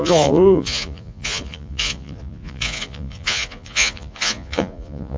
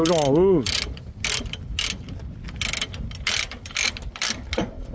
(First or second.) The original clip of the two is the second